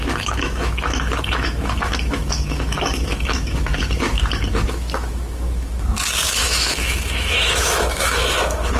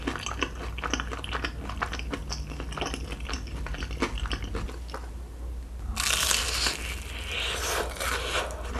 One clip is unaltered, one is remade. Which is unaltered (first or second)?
second